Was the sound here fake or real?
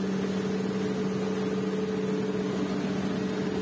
real